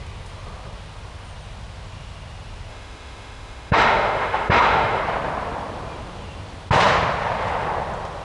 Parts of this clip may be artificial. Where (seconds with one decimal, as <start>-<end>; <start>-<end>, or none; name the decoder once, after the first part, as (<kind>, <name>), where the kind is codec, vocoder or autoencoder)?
2.7-5.0 (autoencoder, DAC-VAE)